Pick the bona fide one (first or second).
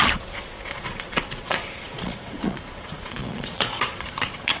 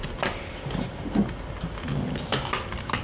second